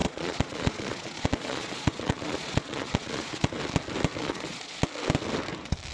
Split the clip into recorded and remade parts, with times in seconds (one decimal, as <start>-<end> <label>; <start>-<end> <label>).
0.0-3.5 remade; 3.5-4.2 recorded; 4.2-4.8 remade; 4.8-5.9 recorded